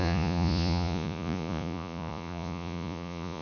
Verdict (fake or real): fake